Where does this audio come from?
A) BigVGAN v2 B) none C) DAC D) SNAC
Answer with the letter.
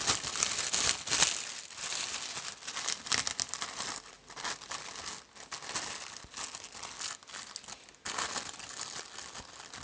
B